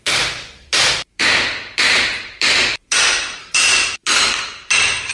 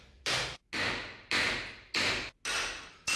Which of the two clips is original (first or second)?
second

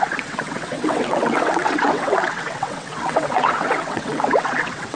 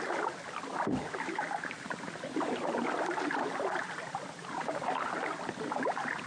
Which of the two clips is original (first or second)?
second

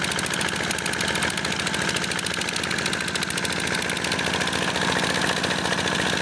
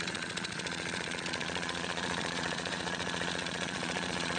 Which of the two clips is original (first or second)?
first